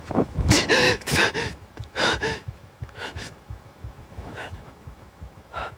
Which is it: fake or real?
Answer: fake